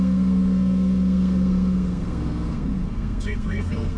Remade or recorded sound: remade